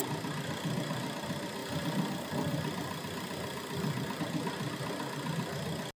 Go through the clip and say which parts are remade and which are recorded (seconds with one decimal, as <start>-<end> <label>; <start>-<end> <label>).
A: 0.0-1.6 recorded; 1.6-4.2 remade; 4.2-6.0 recorded